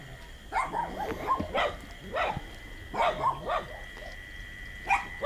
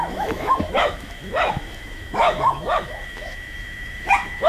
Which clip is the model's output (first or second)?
second